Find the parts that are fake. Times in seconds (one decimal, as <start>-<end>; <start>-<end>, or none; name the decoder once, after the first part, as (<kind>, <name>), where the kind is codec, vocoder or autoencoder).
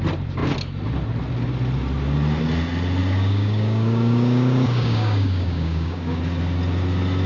3.0-6.2 (codec, DAC)